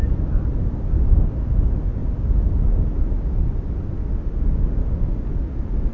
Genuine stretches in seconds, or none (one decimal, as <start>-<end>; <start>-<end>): 0.0-5.9